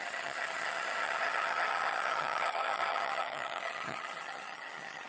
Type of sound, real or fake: fake